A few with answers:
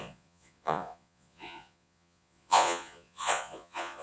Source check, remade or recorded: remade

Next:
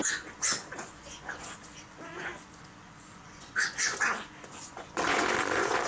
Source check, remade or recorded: remade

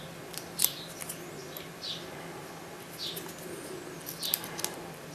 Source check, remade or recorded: recorded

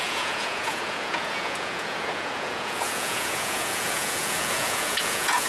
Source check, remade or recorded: remade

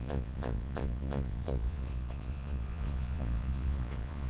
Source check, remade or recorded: remade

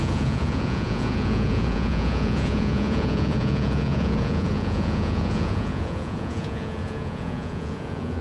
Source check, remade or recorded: remade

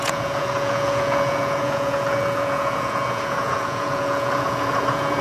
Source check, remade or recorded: remade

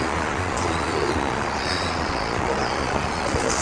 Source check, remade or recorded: remade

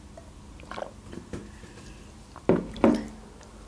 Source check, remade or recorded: recorded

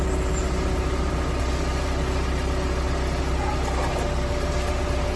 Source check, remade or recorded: recorded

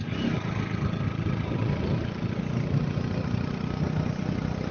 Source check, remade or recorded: recorded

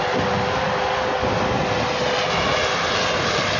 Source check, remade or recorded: recorded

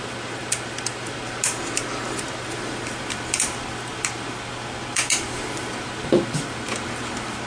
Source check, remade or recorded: recorded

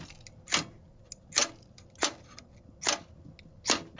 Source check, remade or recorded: recorded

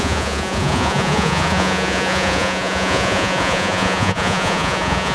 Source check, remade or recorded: remade